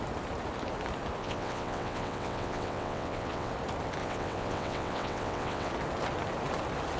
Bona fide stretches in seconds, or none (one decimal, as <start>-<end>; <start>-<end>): 0.0-1.2; 3.5-4.0; 5.7-7.0